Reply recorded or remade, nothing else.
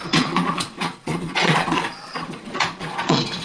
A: remade